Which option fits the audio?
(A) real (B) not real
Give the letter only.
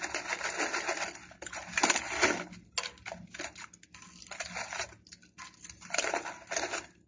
A